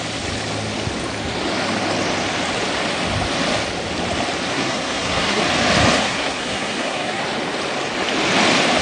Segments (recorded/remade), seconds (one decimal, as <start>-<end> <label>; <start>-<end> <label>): 0.0-4.5 recorded; 4.5-5.4 remade; 5.4-6.0 recorded; 6.0-7.2 remade; 7.2-8.8 recorded